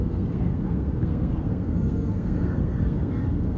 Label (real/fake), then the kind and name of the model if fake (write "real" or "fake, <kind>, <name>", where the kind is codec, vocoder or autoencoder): fake, codec, SNAC